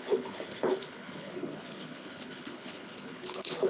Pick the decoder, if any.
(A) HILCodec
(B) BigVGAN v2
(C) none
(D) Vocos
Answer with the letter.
A